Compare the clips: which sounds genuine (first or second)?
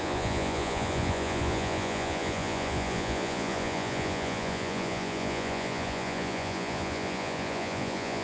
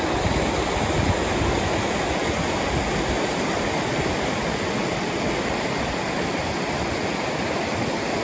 second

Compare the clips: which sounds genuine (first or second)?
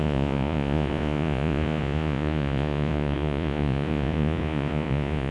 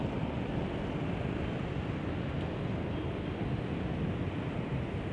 second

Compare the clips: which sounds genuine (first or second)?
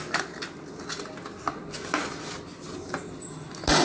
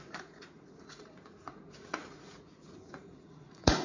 first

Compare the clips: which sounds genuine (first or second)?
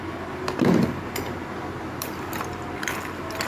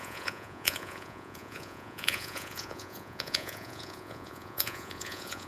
first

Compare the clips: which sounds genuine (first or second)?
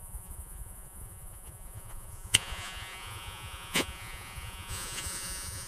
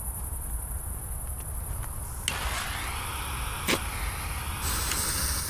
second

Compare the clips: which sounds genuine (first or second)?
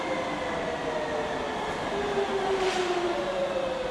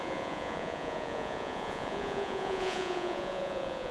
first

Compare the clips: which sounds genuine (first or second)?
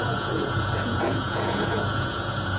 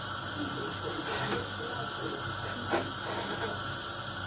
second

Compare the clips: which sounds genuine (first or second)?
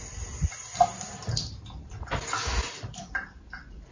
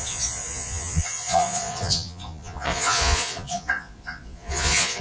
first